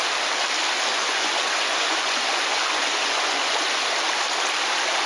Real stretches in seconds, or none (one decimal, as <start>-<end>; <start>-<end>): 0.0-0.9; 3.6-5.1